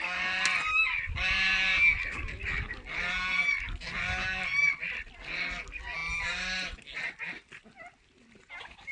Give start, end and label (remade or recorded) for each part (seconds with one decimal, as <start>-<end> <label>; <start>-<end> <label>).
0.0-8.9 recorded